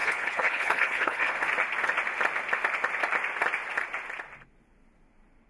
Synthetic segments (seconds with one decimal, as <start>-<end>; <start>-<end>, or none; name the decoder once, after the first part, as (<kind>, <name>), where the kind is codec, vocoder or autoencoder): 0.0-1.3 (codec, HILCodec)